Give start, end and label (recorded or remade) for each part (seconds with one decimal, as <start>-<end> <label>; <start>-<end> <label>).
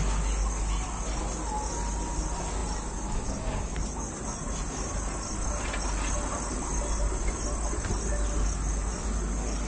0.0-9.7 recorded